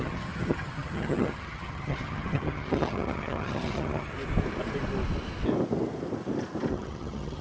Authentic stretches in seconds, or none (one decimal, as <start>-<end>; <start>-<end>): 4.1-6.7